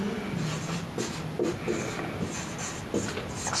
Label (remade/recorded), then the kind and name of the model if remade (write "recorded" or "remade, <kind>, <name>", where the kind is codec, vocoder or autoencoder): recorded